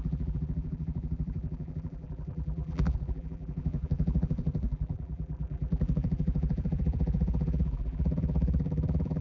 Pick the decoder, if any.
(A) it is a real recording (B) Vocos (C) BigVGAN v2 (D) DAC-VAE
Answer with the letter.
C